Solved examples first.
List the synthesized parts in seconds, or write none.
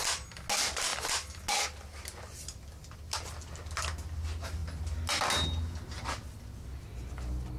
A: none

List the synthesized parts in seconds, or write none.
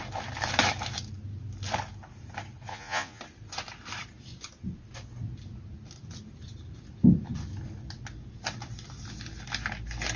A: 2.7-3.2 (vocoder, Vocos)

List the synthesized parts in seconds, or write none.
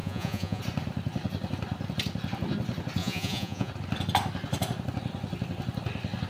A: 0.0-0.6 (vocoder, Vocos); 3.0-3.7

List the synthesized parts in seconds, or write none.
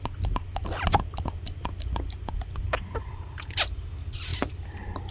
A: none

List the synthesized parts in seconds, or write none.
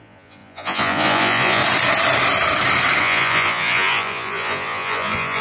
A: 0.0-1.6 (vocoder, Vocos); 3.0-5.4